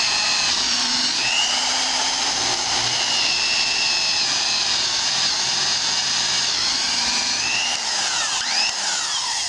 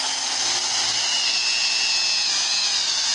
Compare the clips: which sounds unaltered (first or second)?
second